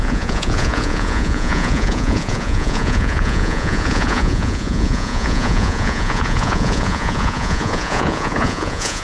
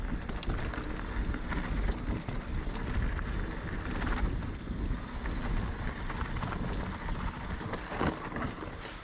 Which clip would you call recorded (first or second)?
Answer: second